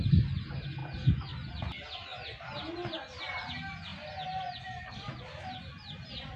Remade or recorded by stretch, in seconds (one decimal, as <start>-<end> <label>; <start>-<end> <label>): 0.0-6.4 recorded